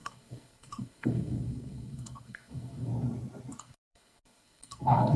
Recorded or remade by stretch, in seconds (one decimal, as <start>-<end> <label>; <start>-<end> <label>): 0.0-2.9 remade; 2.9-3.6 recorded; 3.6-5.2 remade